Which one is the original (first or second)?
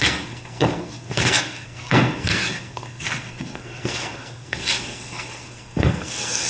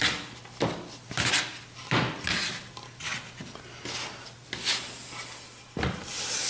second